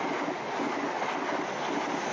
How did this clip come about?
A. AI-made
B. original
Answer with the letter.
B